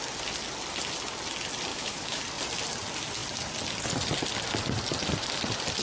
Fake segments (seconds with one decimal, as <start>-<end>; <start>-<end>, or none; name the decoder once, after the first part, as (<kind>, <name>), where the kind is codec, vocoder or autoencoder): 1.7-2.2 (autoencoder, DAC-VAE)